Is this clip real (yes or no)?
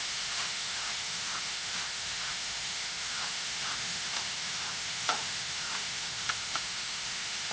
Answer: no